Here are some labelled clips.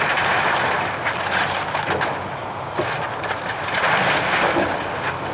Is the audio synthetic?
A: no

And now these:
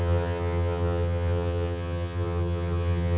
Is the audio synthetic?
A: yes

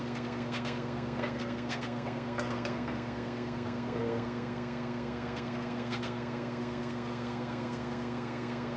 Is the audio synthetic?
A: yes